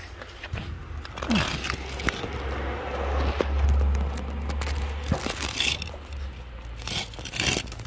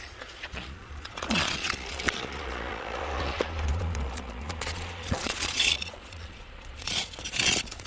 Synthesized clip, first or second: second